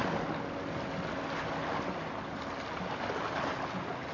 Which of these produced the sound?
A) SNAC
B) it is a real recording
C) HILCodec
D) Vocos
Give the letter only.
B